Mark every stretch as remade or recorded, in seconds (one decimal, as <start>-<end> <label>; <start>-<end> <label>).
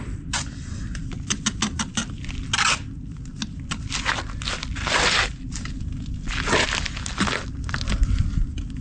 0.0-8.8 recorded